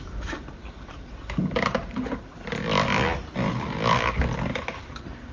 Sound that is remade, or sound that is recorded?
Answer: recorded